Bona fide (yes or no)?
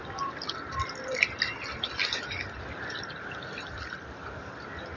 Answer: yes